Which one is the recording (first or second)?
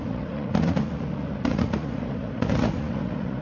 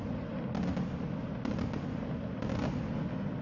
second